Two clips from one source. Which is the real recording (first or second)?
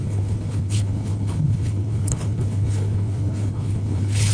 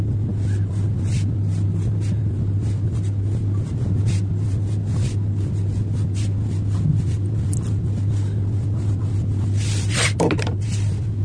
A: second